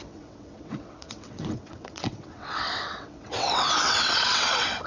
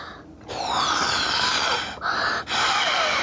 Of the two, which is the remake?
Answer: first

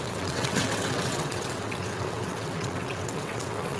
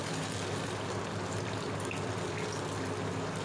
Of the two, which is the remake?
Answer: first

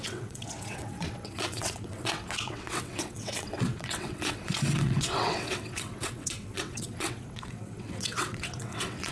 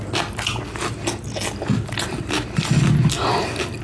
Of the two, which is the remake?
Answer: first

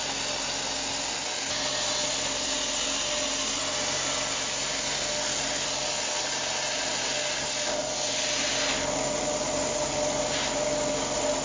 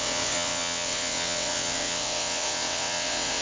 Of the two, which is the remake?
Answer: second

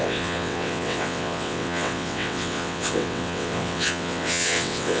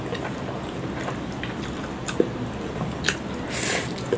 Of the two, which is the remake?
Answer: first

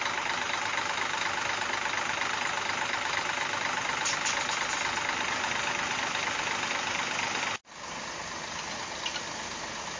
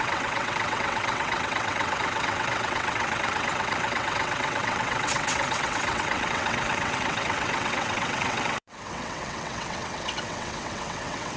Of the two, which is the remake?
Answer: second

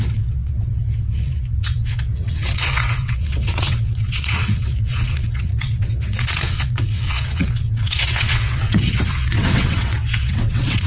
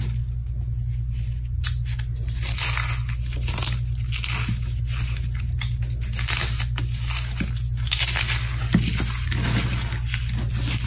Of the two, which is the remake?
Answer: first